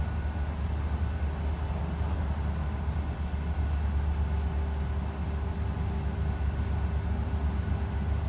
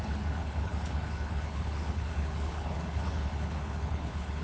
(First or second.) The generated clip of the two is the second